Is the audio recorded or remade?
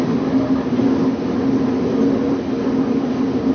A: recorded